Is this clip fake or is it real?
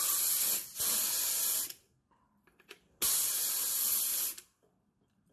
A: real